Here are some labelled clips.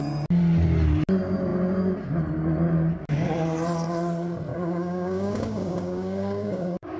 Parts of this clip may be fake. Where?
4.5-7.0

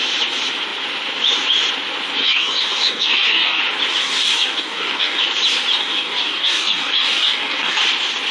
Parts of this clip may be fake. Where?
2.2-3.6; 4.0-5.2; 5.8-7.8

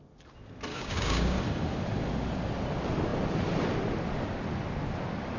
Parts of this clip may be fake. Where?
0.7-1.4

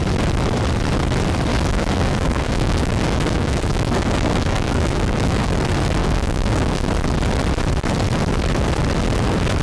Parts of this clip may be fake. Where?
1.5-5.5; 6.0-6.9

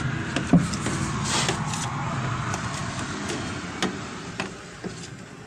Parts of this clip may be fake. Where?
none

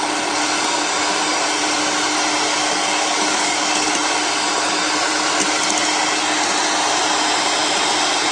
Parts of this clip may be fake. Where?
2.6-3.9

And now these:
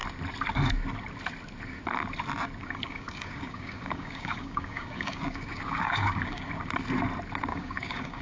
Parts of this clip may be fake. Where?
2.6-6.5; 7.5-8.2